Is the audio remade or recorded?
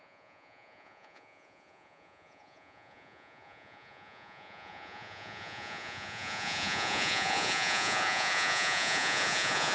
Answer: remade